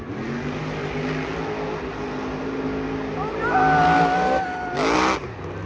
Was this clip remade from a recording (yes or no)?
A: no